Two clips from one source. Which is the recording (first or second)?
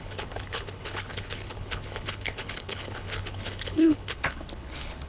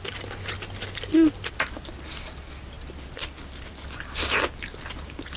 second